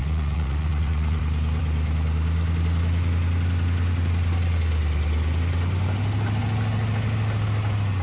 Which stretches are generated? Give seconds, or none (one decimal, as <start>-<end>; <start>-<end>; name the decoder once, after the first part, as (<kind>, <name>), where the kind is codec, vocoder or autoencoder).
0.0-1.2 (vocoder, Vocos)